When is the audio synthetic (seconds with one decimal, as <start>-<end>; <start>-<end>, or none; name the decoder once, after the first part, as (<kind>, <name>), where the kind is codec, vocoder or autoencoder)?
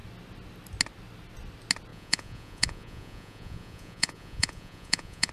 1.9-5.3 (vocoder, Vocos)